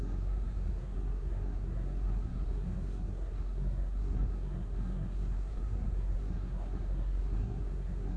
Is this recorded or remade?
remade